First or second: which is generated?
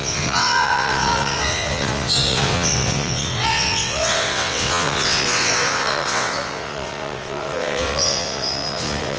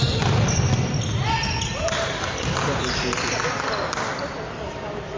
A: first